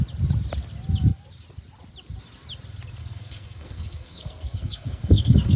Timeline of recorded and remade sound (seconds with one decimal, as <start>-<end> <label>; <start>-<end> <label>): 0.0-3.0 recorded; 3.0-5.6 remade